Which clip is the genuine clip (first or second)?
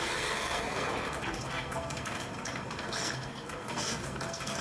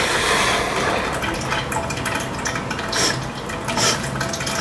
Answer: second